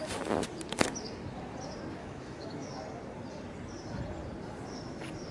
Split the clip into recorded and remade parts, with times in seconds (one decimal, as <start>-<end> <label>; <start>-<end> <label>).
0.0-2.0 recorded; 2.0-2.7 remade; 2.7-5.3 recorded